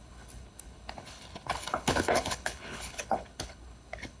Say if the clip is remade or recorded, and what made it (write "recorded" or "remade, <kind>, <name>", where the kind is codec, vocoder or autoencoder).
remade, codec, HILCodec